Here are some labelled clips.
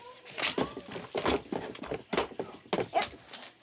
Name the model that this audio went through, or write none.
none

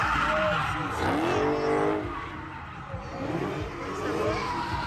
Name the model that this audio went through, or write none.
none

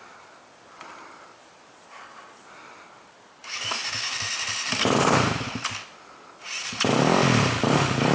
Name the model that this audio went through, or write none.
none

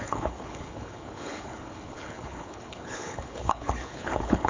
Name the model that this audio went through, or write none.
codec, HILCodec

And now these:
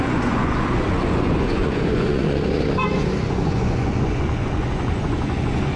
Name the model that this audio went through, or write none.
vocoder, Vocos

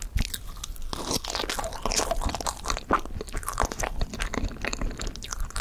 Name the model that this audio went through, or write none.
none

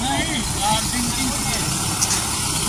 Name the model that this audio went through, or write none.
none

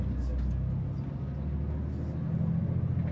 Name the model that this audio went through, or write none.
none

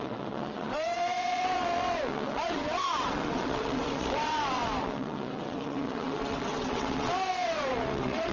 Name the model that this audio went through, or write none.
vocoder, WaveNeXt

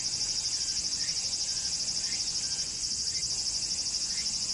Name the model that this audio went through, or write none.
vocoder, Vocos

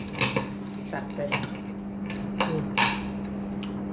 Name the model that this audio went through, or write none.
none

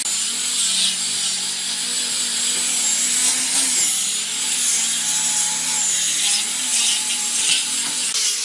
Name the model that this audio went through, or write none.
none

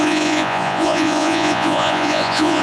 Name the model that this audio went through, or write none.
vocoder, Vocos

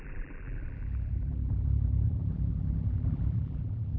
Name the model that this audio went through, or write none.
vocoder, BigVGAN v2